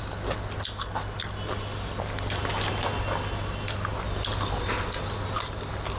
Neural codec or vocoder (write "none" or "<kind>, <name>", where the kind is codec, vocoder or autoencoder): none